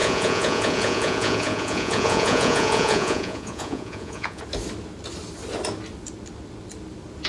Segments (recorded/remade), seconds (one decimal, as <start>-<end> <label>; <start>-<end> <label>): 0.0-4.4 remade; 4.4-7.3 recorded